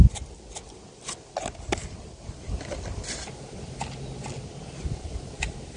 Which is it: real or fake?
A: real